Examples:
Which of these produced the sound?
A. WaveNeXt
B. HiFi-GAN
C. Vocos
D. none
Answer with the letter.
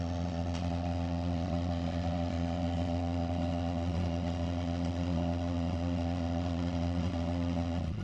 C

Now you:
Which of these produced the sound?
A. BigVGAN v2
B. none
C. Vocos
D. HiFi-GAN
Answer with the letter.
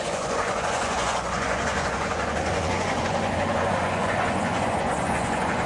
C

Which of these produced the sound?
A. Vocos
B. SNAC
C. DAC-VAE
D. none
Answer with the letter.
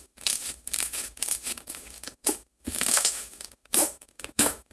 C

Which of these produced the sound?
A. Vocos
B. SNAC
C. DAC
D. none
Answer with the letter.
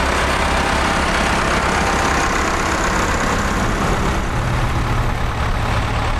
D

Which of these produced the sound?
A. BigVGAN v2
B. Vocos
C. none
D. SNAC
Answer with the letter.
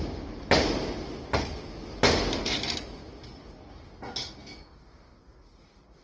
C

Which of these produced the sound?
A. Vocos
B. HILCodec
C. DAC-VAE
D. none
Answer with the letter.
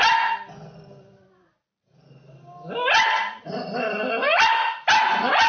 D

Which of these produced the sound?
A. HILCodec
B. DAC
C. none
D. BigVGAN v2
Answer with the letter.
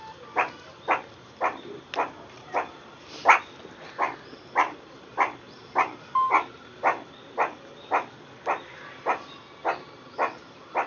C